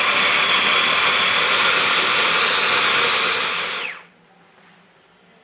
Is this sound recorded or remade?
recorded